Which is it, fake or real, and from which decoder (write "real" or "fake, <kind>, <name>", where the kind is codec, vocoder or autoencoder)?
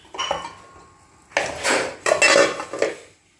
real